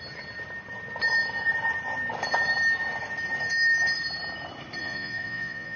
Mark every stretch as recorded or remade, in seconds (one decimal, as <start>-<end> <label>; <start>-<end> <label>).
0.0-4.8 recorded; 4.8-5.8 remade